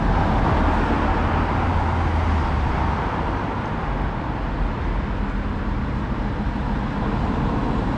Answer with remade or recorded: recorded